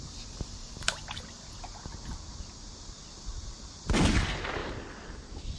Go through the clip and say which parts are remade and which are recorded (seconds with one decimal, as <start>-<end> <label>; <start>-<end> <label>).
0.0-5.6 recorded